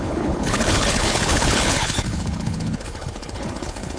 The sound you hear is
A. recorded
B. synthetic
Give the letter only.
B